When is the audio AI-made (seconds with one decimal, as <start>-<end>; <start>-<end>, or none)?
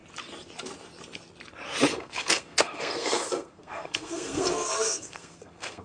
1.9-5.8